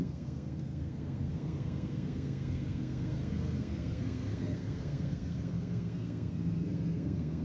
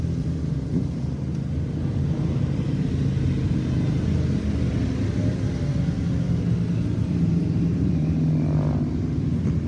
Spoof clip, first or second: first